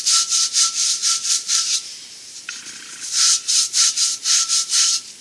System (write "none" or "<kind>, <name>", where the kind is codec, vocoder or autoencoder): vocoder, BigVGAN v2